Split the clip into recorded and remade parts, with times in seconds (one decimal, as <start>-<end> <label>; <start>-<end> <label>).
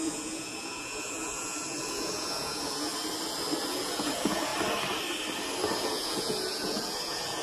0.0-2.9 remade; 2.9-3.8 recorded; 3.8-4.5 remade; 4.5-5.7 recorded; 5.7-7.4 remade